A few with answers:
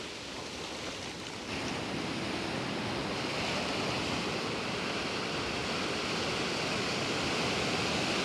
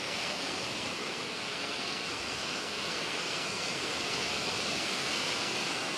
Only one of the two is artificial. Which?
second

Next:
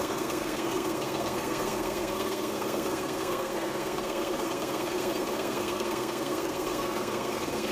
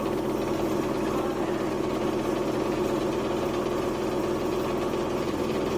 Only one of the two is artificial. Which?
first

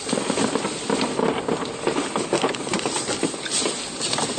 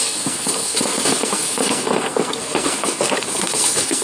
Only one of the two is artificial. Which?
second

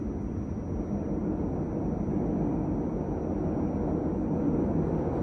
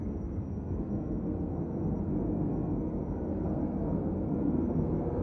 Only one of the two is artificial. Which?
second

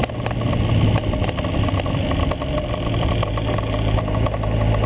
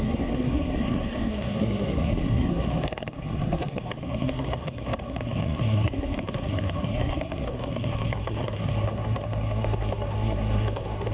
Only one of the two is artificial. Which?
second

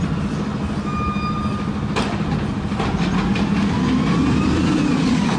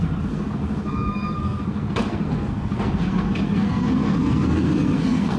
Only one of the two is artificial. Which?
second